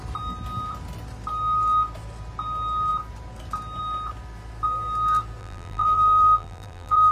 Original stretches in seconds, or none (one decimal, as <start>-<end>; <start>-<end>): 0.0-5.4